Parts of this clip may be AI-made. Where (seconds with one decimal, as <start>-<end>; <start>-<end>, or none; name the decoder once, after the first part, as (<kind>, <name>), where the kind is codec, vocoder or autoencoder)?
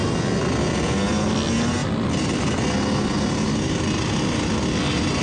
none